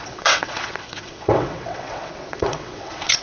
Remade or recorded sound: remade